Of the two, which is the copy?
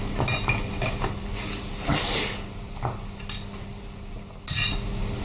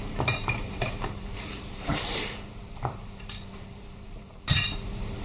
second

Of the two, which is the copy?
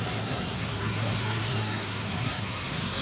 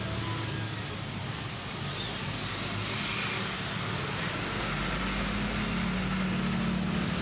first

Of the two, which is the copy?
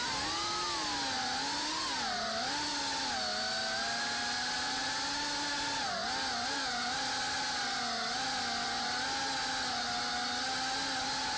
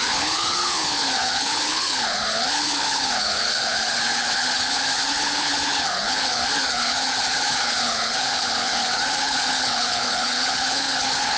second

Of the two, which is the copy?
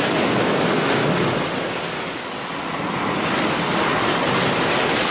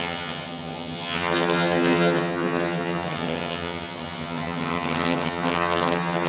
second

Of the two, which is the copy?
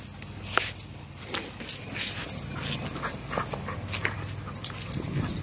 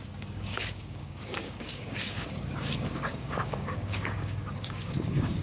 second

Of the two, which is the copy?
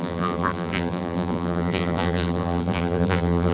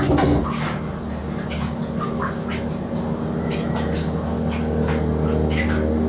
first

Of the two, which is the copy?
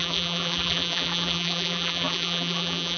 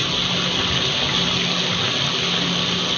first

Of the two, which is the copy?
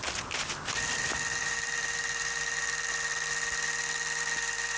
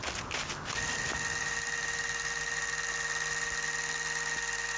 first